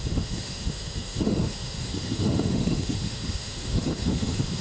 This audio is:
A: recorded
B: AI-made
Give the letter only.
B